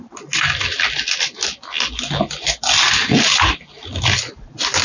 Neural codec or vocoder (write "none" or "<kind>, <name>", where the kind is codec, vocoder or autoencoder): none